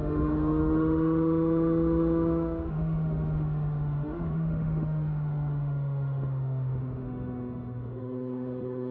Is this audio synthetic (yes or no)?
yes